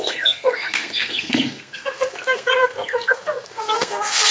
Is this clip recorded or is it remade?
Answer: remade